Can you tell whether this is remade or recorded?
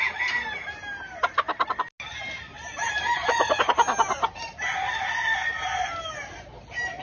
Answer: recorded